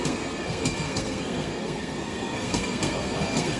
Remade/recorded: remade